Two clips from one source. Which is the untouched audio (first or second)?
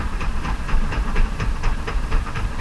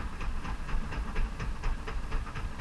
second